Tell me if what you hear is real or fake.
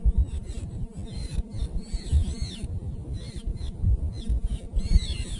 real